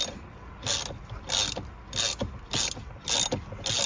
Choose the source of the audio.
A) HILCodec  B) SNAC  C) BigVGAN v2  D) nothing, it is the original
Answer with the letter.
D